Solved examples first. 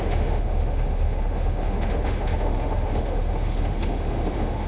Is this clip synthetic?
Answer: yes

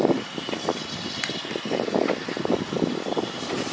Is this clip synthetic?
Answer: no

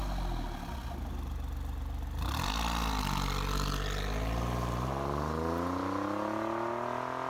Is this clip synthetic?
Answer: no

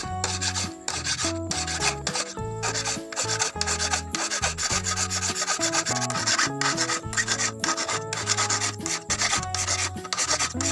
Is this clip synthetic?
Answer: no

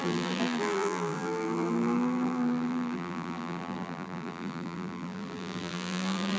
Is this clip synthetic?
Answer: yes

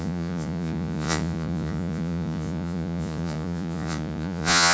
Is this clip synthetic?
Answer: yes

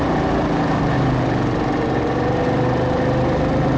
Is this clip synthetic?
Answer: no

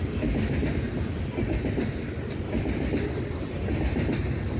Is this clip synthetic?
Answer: no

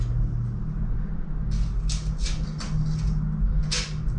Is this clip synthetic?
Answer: no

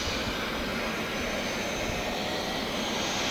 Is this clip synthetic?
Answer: no